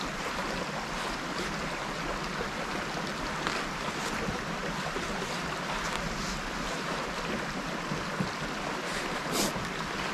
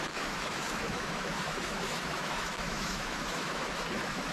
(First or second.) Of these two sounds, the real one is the first